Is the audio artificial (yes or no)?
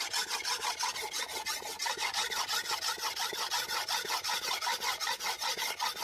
no